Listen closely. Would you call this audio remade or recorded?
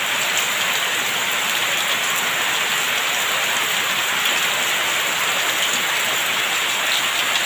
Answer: recorded